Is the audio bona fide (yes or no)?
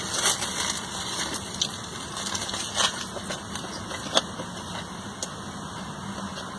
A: yes